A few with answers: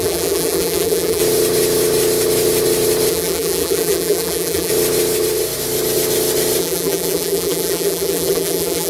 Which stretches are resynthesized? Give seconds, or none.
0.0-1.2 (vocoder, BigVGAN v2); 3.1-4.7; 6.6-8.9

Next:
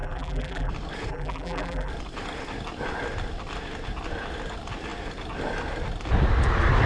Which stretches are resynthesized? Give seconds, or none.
0.0-0.7 (vocoder, BigVGAN v2); 1.1-1.9

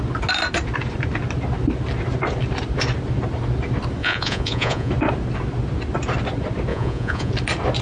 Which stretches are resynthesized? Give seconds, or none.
4.0-4.9 (vocoder, Vocos); 6.7-7.3

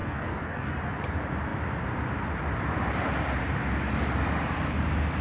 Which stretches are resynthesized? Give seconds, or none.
0.0-0.7 (codec, DAC)

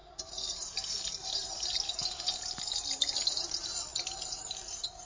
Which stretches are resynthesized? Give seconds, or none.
none

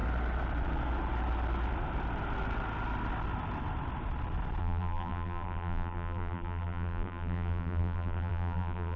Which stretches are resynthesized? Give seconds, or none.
4.6-9.0 (vocoder, BigVGAN v2)

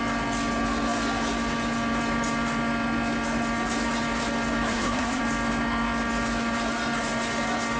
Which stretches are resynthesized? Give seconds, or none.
4.7-5.2 (codec, SNAC)

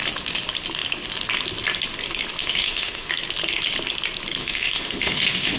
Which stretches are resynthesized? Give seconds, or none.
2.4-3.1 (autoencoder, DAC-VAE); 4.4-5.6